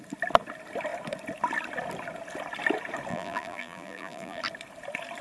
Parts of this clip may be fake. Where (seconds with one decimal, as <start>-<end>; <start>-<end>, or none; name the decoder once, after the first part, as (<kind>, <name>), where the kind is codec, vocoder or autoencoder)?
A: 3.1-4.4 (vocoder, BigVGAN v2)